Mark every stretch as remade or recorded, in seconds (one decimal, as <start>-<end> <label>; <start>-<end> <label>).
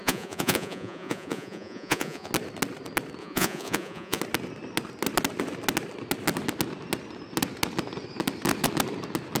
0.0-2.3 remade; 2.3-3.2 recorded; 3.2-4.2 remade; 4.2-9.4 recorded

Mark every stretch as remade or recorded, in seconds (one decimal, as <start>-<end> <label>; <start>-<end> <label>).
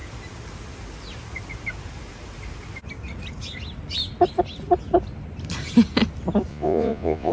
0.0-6.5 recorded; 6.5-7.3 remade